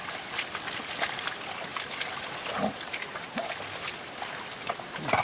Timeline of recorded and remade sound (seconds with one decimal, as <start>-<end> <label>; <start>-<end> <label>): 0.0-5.2 recorded